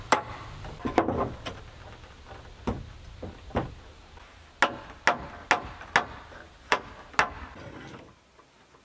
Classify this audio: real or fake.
real